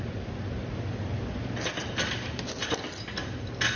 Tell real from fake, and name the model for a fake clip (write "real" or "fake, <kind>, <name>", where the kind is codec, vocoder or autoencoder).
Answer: real